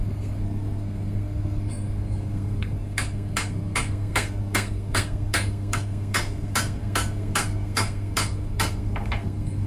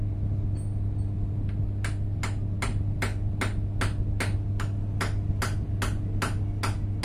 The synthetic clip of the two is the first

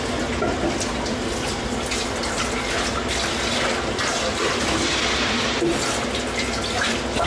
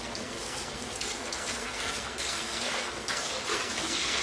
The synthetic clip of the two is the second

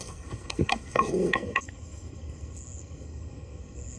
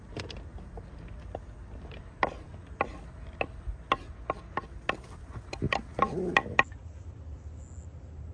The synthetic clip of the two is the first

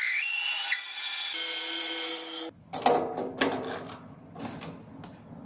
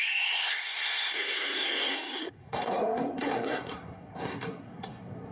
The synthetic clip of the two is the second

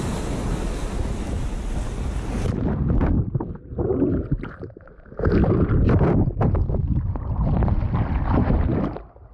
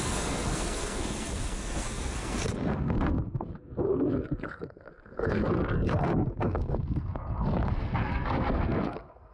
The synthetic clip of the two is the second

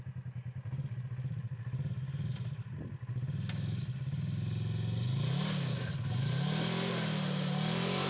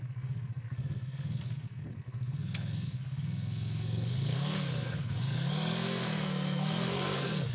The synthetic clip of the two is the second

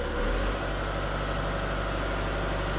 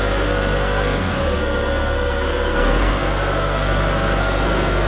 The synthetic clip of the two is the second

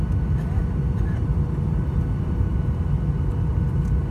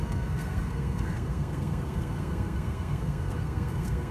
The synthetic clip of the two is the second